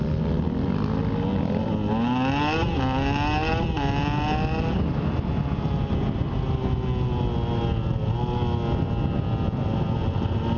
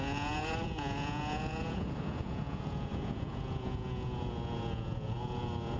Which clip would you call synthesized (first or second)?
second